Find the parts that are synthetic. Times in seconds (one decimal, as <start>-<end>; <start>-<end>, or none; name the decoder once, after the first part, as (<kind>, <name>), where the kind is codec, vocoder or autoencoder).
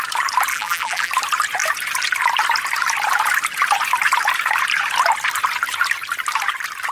0.5-1.1 (vocoder, BigVGAN v2)